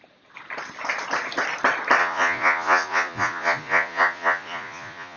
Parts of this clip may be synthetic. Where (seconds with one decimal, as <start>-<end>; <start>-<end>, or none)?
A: 2.0-5.2